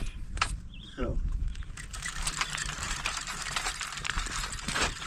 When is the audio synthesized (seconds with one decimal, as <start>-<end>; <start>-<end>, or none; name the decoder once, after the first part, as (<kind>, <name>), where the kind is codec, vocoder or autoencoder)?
0.0-1.1 (vocoder, BigVGAN v2); 2.0-3.7; 4.6-5.1